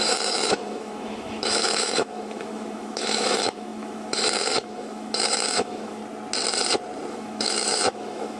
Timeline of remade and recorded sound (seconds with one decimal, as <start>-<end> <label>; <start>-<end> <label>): 0.0-6.0 remade; 6.0-7.1 recorded; 7.1-8.4 remade